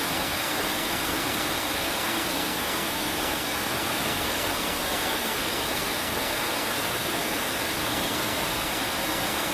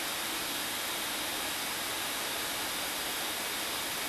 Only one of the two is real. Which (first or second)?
second